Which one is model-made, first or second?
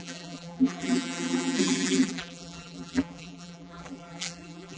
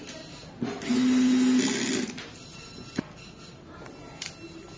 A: first